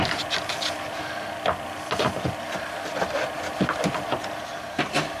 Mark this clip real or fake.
real